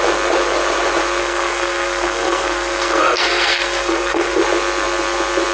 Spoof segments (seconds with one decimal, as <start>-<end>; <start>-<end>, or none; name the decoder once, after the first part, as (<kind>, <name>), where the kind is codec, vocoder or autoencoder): 1.2-4.4 (codec, SNAC)